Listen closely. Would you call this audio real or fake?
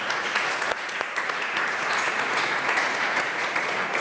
fake